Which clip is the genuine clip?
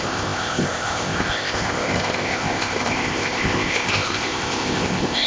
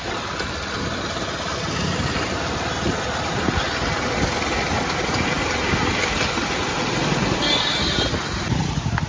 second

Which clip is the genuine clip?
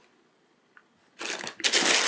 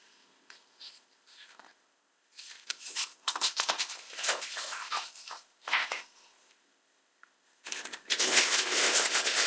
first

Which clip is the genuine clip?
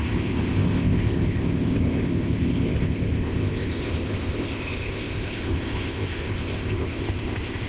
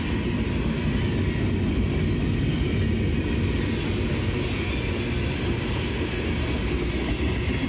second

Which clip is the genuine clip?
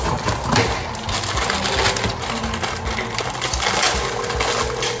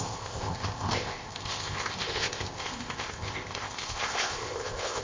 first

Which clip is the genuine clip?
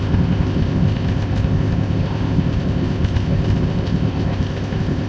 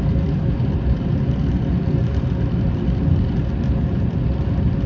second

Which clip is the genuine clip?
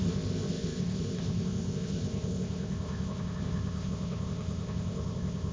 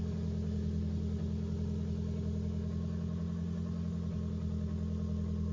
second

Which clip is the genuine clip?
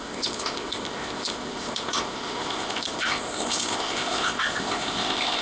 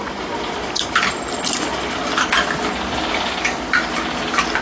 second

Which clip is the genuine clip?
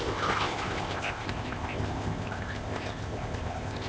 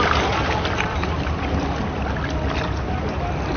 second